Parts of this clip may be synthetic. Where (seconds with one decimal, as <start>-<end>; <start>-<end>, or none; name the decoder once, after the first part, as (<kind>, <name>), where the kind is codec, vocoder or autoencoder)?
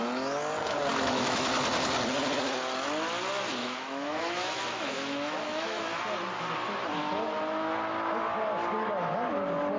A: 0.9-1.5 (autoencoder, DAC-VAE); 3.6-6.0